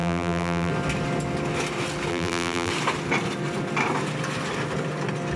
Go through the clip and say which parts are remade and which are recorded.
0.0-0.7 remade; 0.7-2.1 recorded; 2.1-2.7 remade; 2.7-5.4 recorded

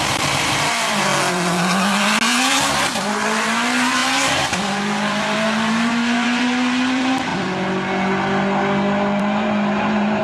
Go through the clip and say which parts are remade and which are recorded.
0.0-1.1 remade; 1.1-2.7 recorded; 2.7-7.3 remade; 7.3-9.2 recorded; 9.2-10.2 remade

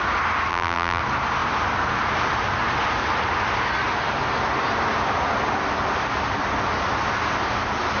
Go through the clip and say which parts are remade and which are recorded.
0.0-0.5 recorded; 0.5-1.0 remade; 1.0-8.0 recorded

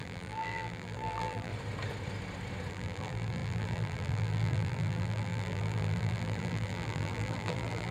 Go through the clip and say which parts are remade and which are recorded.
0.0-1.5 remade; 1.5-2.7 recorded; 2.7-7.9 remade

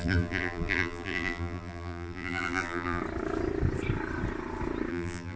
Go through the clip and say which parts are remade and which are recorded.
0.0-3.0 remade; 3.0-4.9 recorded; 4.9-5.4 remade